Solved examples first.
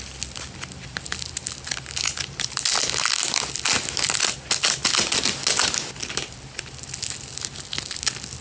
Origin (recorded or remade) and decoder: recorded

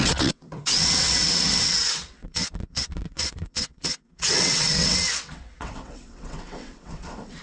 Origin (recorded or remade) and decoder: remade, vocoder, WaveNeXt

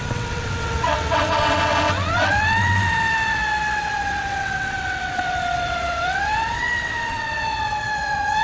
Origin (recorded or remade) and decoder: remade, vocoder, WaveNeXt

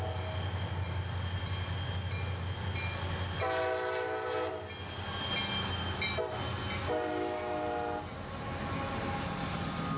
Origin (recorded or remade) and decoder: recorded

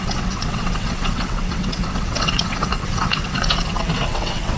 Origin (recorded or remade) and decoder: remade, vocoder, WaveNeXt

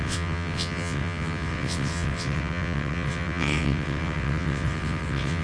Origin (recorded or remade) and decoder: remade, vocoder, WaveNeXt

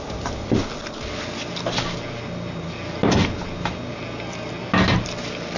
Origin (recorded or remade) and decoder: recorded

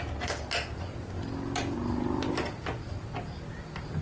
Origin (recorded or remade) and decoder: recorded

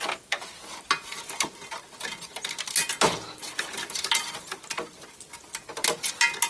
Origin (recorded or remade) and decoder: recorded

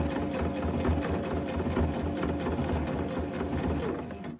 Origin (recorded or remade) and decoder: recorded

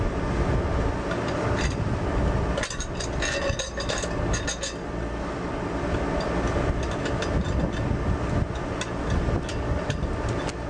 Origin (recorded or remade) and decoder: recorded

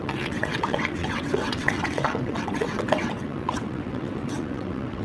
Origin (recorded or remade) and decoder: remade, vocoder, WaveNeXt